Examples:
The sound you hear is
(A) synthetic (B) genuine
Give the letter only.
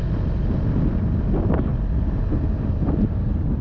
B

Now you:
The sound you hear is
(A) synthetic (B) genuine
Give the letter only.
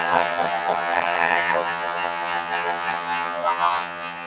A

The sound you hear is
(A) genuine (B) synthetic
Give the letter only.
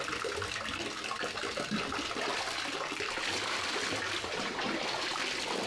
A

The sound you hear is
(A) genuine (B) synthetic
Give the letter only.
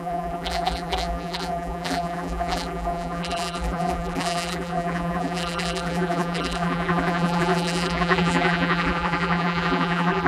B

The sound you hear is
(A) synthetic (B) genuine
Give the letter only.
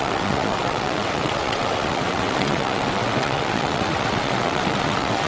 A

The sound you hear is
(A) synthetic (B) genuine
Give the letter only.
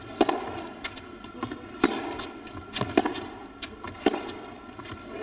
B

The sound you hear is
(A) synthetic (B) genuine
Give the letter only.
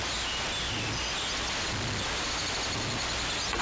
B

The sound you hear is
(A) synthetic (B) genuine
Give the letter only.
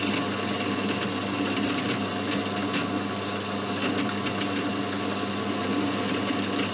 B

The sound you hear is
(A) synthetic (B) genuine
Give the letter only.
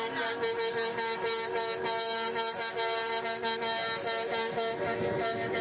B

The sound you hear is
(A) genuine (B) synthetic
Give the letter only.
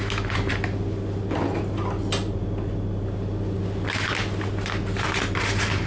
A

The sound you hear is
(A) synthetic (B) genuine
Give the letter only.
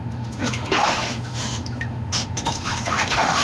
A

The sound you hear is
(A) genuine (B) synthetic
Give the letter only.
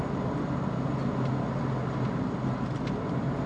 A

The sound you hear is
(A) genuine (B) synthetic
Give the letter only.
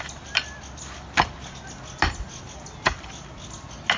A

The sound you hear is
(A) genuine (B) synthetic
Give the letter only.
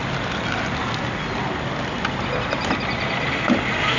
A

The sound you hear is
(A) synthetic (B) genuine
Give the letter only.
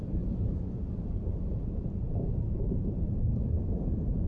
A